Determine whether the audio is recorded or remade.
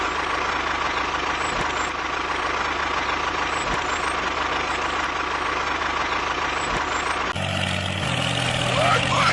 recorded